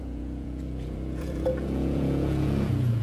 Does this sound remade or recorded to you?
remade